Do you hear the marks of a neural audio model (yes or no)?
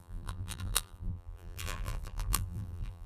yes